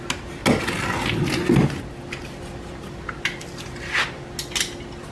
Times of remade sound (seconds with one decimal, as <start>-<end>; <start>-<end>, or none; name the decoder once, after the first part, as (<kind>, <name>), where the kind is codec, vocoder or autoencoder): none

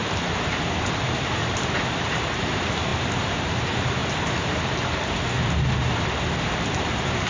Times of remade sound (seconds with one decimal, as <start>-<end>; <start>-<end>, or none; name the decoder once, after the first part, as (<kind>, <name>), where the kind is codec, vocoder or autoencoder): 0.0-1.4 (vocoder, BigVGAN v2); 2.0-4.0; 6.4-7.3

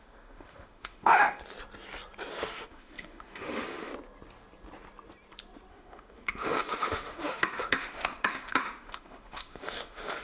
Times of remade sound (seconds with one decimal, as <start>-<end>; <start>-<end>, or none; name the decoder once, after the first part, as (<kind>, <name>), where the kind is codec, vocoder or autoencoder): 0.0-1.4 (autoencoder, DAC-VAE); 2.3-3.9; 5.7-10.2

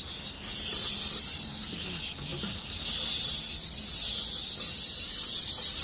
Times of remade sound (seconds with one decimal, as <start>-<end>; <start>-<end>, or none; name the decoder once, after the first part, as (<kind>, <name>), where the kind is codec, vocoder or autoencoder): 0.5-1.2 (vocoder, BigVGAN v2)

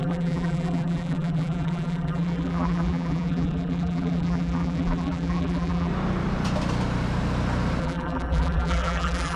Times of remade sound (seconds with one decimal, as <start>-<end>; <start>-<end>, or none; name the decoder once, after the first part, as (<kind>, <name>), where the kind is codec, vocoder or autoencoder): 0.0-5.9 (vocoder, BigVGAN v2); 7.8-9.4

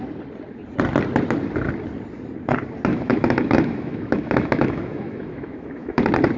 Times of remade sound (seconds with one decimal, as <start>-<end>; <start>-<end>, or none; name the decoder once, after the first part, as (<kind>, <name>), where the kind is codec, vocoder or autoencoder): 2.9-6.0 (autoencoder, DAC-VAE)

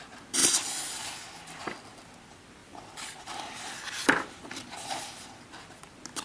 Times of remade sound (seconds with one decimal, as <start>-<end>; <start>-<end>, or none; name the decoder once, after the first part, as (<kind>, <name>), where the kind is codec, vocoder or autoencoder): 2.6-5.0 (vocoder, BigVGAN v2)